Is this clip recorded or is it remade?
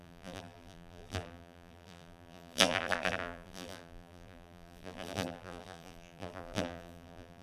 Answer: remade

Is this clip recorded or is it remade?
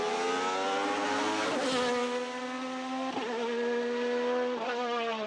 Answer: recorded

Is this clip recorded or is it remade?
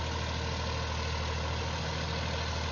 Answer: recorded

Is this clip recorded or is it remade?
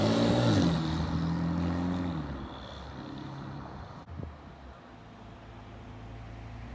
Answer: recorded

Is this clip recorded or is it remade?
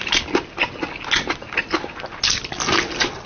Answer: recorded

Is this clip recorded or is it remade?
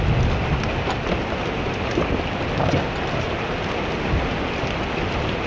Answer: recorded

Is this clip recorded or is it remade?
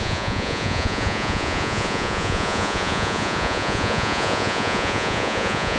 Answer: remade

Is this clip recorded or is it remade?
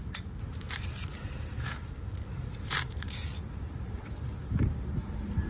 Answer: remade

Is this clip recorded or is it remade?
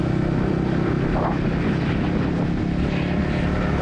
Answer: recorded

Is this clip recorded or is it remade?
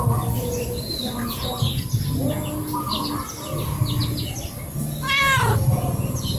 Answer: recorded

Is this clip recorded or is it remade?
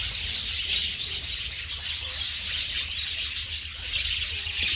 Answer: recorded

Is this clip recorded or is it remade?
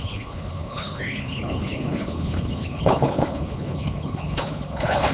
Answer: remade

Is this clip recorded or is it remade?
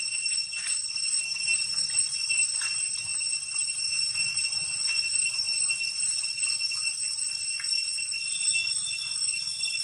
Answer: recorded